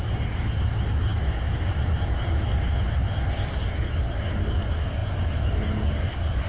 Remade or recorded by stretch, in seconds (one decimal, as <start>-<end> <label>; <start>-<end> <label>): 0.0-6.5 recorded